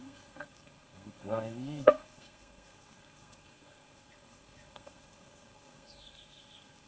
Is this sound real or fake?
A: fake